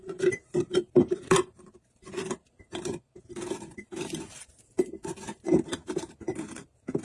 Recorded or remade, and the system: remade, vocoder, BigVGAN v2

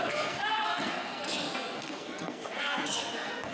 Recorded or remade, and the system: remade, codec, SNAC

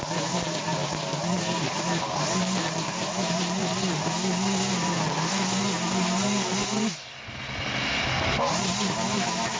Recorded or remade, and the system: recorded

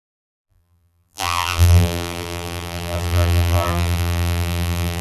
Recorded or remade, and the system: remade, vocoder, BigVGAN v2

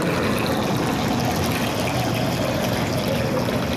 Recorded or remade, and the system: recorded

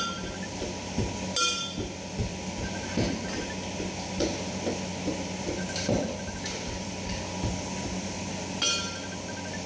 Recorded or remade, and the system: recorded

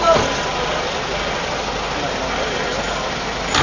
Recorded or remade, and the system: recorded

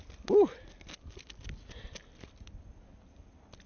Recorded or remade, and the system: recorded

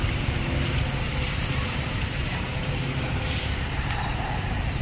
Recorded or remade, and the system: remade, vocoder, BigVGAN v2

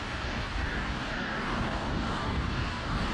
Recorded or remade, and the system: remade, codec, DAC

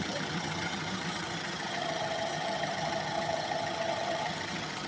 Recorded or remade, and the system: remade, vocoder, HiFi-GAN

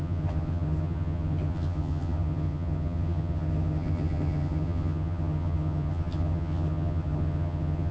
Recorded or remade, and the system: remade, vocoder, HiFi-GAN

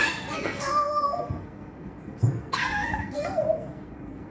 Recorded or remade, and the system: remade, codec, SNAC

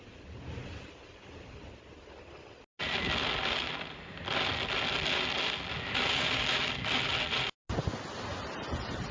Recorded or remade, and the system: recorded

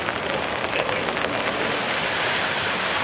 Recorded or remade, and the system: recorded